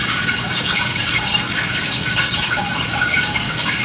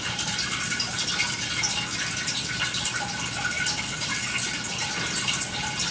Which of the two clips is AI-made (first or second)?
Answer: first